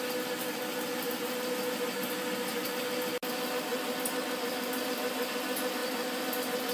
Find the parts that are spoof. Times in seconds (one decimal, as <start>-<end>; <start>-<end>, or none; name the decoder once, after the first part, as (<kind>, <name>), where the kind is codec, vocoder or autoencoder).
none